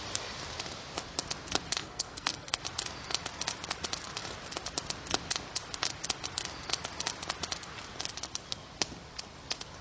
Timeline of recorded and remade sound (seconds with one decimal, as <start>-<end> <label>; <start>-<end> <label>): 0.0-1.8 recorded; 1.8-2.6 remade; 2.6-9.8 recorded